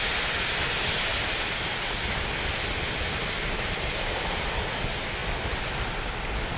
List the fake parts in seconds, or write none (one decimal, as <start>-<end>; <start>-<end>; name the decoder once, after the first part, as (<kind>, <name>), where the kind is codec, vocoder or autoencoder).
none